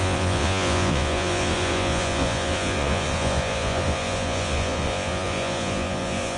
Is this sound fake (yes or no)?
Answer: yes